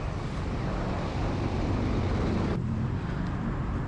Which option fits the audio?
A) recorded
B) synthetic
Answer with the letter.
B